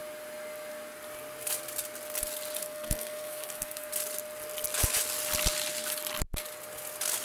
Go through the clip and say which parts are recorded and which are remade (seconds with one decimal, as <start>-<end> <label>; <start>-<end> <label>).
0.0-2.6 recorded; 2.6-3.9 remade; 3.9-7.2 recorded